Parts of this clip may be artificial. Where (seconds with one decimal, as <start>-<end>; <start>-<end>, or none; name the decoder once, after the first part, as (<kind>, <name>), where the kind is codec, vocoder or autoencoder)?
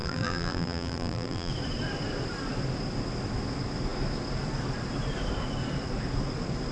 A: 0.0-1.5 (vocoder, BigVGAN v2)